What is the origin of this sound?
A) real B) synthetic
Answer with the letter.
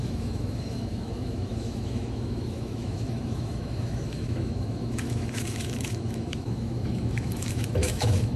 B